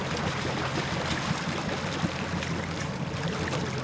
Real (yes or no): yes